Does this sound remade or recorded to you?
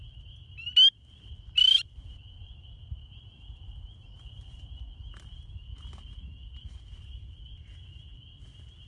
recorded